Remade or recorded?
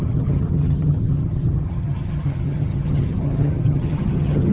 remade